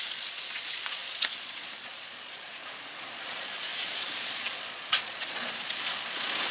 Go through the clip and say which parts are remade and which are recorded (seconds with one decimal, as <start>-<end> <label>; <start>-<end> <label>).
0.0-2.6 remade; 2.6-3.1 recorded; 3.1-6.5 remade